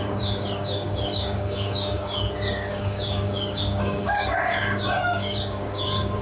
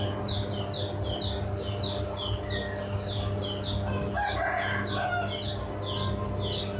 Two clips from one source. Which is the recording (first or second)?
second